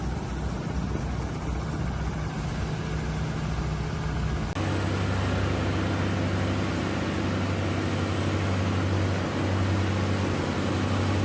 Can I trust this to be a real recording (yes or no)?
yes